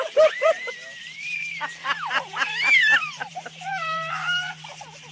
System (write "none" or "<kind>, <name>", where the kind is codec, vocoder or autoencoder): vocoder, BigVGAN v2